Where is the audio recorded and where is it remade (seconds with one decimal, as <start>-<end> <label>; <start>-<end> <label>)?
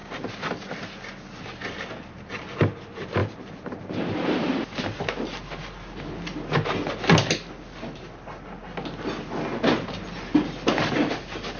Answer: 0.0-3.2 recorded; 3.2-5.0 remade; 5.0-11.6 recorded